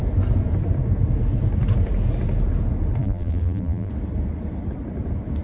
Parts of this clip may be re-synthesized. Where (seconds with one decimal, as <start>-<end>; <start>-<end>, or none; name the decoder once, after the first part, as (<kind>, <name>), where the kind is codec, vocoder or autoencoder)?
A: 3.0-3.9 (vocoder, BigVGAN v2)